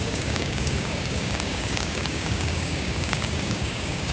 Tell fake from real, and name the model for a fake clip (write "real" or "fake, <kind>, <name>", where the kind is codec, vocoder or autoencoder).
fake, codec, DAC